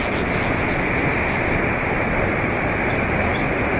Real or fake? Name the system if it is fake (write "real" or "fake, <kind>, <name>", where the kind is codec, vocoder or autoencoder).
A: real